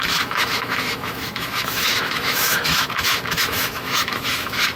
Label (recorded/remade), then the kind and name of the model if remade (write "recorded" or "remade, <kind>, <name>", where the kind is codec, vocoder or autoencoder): remade, autoencoder, DAC-VAE